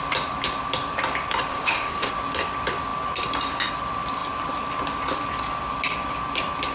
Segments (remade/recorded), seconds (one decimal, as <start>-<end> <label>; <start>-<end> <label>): 0.0-1.5 recorded; 1.5-2.1 remade; 2.1-6.7 recorded